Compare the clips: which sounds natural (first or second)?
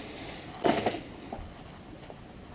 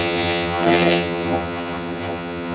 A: first